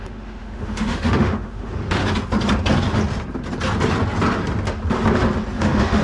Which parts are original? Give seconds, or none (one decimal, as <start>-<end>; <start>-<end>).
2.0-5.6